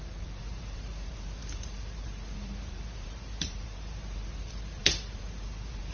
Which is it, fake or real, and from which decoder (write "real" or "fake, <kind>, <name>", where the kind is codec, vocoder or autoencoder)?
fake, vocoder, BigVGAN v2